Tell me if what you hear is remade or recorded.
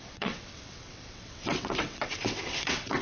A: remade